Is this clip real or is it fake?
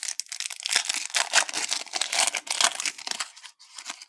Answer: real